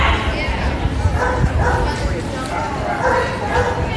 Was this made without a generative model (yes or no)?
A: yes